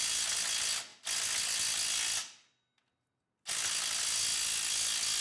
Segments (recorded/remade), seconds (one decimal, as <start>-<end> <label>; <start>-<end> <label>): 0.0-5.2 recorded